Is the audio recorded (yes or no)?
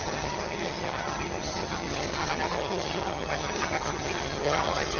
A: no